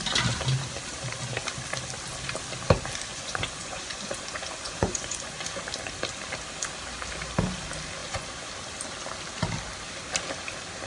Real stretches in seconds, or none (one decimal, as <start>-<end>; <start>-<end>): 0.0-3.1; 5.6-8.0; 8.5-10.9